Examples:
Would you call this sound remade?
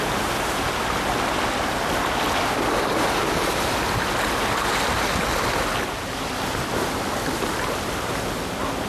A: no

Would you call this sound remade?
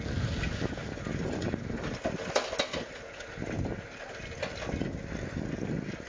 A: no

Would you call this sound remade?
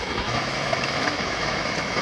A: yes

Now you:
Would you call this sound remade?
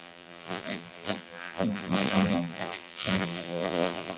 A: yes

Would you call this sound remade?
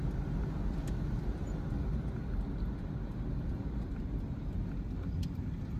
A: no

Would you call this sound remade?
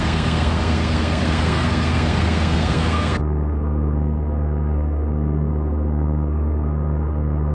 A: yes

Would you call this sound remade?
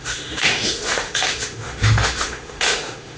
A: yes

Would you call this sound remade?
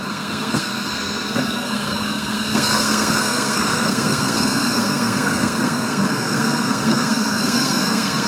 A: yes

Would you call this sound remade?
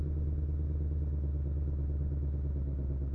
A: no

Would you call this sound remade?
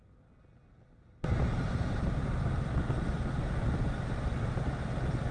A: no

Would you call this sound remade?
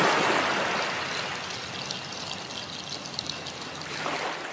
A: no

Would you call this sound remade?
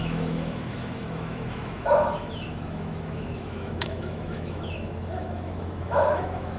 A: yes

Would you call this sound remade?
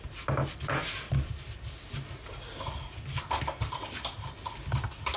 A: no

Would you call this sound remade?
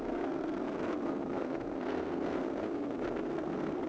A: yes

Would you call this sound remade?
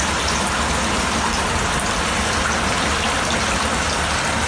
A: no